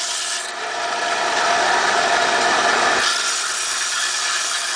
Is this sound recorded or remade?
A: recorded